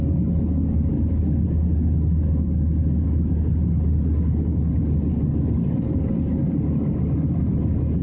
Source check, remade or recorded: recorded